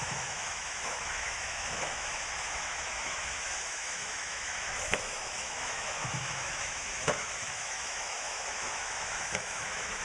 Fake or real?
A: fake